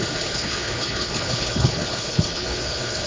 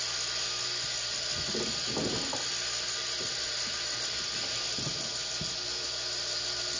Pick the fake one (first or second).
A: first